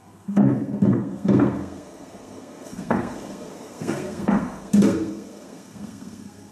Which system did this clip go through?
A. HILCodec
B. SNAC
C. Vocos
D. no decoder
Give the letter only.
B